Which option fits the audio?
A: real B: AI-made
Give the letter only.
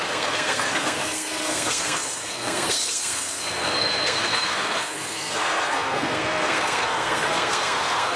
B